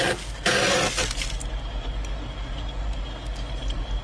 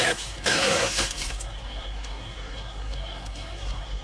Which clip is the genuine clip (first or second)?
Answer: first